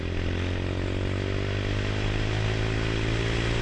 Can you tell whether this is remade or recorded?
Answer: recorded